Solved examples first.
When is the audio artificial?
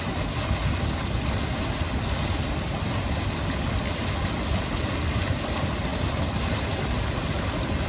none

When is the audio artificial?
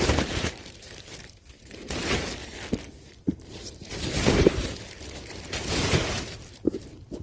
0.0-2.4; 3.1-7.2